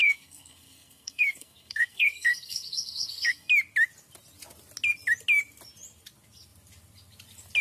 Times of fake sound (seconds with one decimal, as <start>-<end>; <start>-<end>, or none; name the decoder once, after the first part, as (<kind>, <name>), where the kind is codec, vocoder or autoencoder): 0.0-3.5 (codec, SNAC)